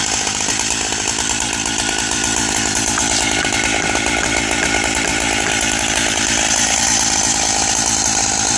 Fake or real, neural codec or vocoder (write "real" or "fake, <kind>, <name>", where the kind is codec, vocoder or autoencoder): fake, vocoder, BigVGAN v2